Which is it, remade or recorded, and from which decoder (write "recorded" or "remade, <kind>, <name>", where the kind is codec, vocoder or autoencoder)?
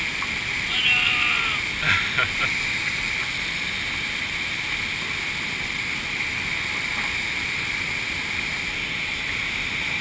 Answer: recorded